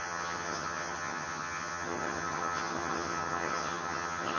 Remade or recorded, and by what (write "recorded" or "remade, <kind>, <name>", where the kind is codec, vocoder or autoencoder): remade, vocoder, HiFi-GAN